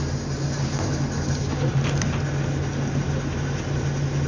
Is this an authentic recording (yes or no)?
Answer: yes